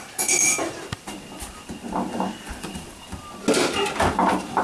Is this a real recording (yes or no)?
yes